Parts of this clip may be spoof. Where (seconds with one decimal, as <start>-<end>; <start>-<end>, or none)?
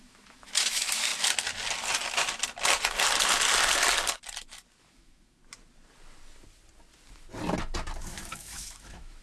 0.0-1.1; 4.8-5.4; 8.0-9.2